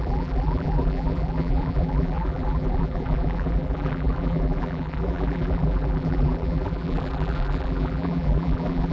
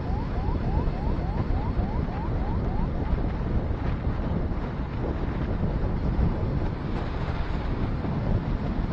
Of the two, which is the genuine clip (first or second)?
second